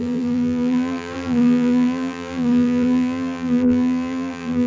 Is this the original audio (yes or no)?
no